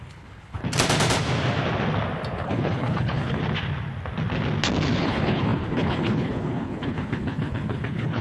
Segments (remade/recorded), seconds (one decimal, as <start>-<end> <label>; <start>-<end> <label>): 0.0-0.6 remade; 0.6-2.4 recorded; 2.4-3.4 remade; 3.4-5.0 recorded; 5.0-8.2 remade